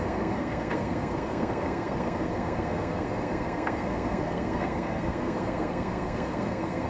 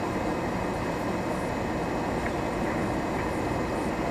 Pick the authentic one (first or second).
second